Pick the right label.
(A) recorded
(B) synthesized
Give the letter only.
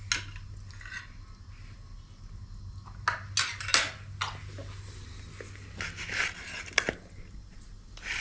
A